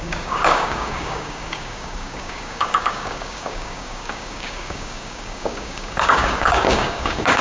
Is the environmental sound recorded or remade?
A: remade